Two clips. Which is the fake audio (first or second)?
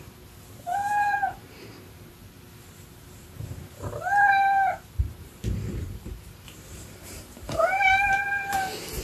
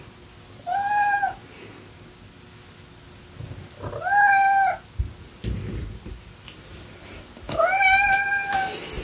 first